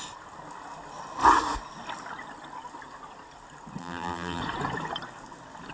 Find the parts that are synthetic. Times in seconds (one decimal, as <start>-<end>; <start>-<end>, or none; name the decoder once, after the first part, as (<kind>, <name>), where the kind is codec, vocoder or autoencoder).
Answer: 3.8-4.4 (vocoder, BigVGAN v2)